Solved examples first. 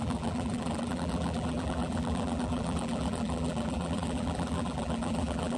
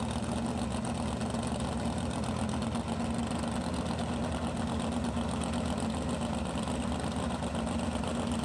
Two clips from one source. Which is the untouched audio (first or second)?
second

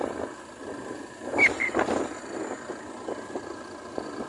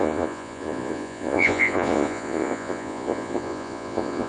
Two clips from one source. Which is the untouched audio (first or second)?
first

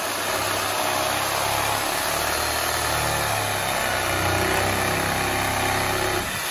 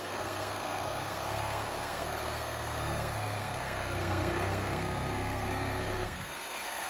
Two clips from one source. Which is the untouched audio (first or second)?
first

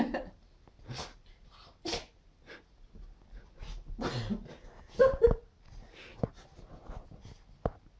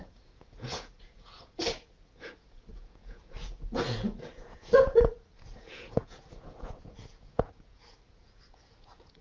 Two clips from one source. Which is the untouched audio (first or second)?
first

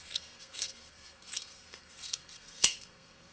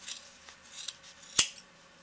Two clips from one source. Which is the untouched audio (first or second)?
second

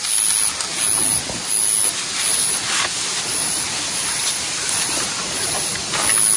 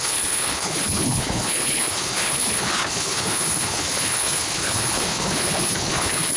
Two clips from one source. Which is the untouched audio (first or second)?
first